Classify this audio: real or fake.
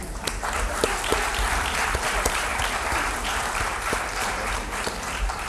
fake